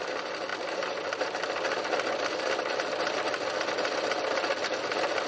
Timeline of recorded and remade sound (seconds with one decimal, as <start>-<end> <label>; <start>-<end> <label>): 0.0-5.3 recorded